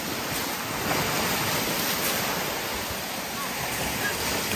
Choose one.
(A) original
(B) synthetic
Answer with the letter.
A